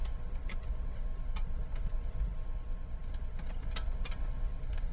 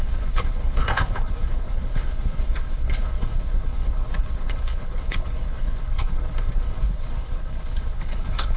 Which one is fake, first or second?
second